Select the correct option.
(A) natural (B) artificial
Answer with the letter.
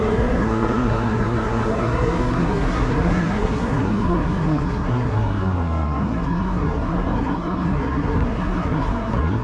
B